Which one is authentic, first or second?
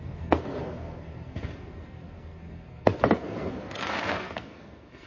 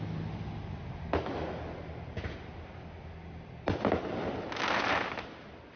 second